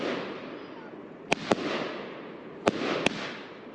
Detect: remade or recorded recorded